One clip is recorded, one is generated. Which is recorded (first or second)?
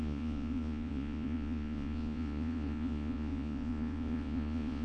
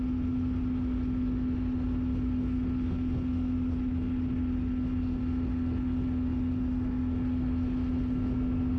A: second